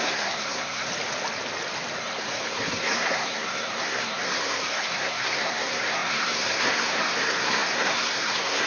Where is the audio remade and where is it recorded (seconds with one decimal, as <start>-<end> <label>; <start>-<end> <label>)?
0.0-0.9 remade; 0.9-2.0 recorded; 2.0-8.7 remade

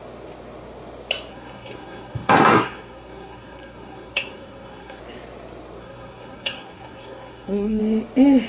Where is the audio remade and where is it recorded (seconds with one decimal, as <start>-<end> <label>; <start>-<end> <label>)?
0.0-1.3 recorded; 1.3-5.0 remade; 5.0-5.8 recorded; 5.8-7.8 remade; 7.8-8.5 recorded

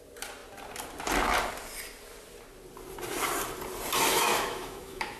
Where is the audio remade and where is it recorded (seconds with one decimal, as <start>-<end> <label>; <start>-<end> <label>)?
0.0-4.1 recorded; 4.1-5.2 remade

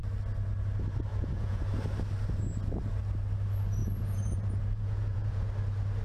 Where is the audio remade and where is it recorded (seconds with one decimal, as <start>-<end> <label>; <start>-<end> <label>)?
0.0-1.1 recorded; 1.1-1.6 remade; 1.6-3.8 recorded; 3.8-5.5 remade; 5.5-6.0 recorded

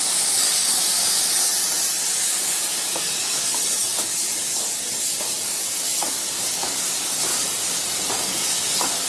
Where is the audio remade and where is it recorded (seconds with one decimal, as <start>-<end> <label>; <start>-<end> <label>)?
0.0-1.5 remade; 1.5-2.2 recorded; 2.2-7.3 remade; 7.3-8.1 recorded; 8.1-9.1 remade

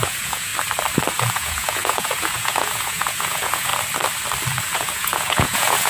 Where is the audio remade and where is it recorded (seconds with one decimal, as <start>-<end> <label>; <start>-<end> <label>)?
0.0-0.5 remade; 0.5-1.3 recorded; 1.3-3.7 remade; 3.7-4.6 recorded; 4.6-5.9 remade